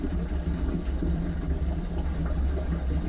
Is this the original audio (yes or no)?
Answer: yes